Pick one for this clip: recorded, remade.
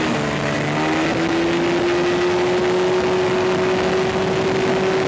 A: recorded